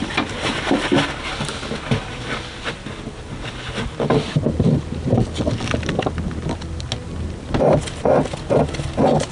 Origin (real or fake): real